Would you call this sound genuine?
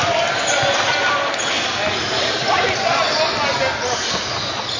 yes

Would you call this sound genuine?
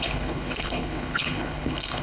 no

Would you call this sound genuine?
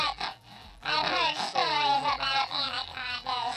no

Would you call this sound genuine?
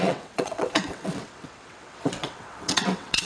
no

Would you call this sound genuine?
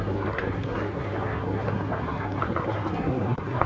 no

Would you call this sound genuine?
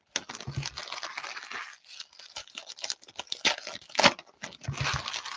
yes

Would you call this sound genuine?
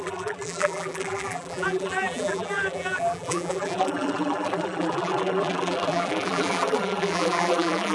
no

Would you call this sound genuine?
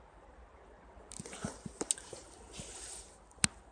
yes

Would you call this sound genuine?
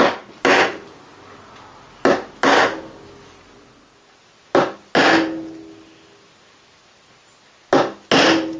yes